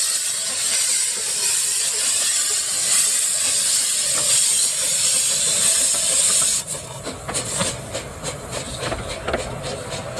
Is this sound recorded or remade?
recorded